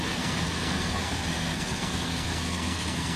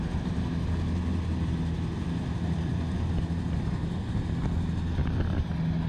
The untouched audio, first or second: second